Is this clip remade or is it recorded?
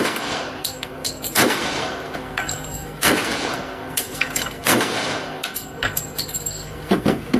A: remade